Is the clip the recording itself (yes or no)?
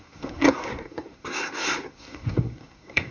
no